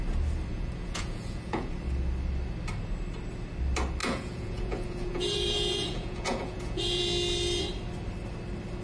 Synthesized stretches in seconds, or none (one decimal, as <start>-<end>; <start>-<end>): 0.5-1.7; 4.0-7.0